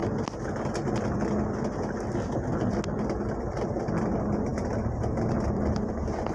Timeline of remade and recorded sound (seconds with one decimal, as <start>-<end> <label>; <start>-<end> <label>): 0.0-6.3 recorded